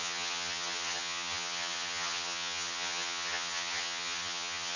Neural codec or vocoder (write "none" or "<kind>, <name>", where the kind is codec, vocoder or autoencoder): vocoder, HiFi-GAN